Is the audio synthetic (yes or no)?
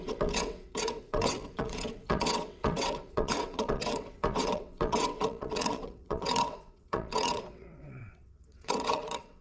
yes